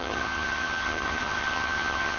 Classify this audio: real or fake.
fake